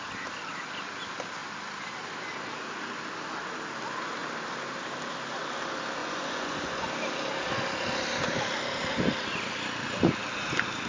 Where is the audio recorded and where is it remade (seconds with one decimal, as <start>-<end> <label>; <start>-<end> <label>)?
0.0-6.0 recorded; 6.0-6.9 remade; 6.9-10.9 recorded